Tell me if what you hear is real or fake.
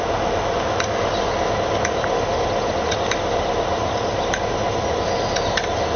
real